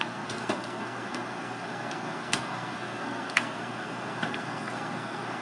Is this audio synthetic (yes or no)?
yes